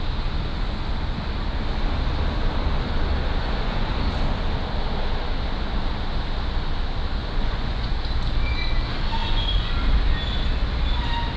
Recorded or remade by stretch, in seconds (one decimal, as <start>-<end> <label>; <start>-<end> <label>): 0.0-3.4 recorded; 3.4-4.0 remade; 4.0-7.2 recorded; 7.2-7.9 remade; 7.9-9.2 recorded; 9.2-9.7 remade; 9.7-11.4 recorded